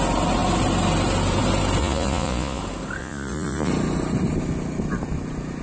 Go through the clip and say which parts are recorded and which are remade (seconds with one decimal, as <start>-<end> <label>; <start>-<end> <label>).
0.0-1.8 recorded; 1.8-2.6 remade; 2.6-3.0 recorded; 3.0-3.7 remade; 3.7-5.6 recorded